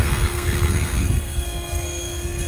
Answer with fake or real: fake